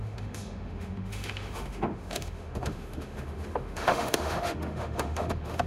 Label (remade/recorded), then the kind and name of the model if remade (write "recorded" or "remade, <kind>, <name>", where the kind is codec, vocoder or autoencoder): remade, autoencoder, DAC-VAE